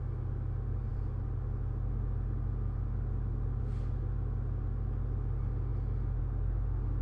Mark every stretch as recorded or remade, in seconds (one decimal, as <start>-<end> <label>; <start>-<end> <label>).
0.0-7.0 recorded